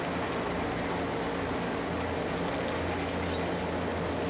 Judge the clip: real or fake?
real